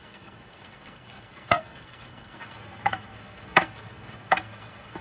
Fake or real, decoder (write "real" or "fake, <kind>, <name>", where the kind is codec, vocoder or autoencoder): fake, codec, SNAC